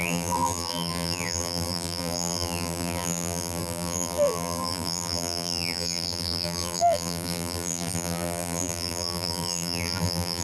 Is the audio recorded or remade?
remade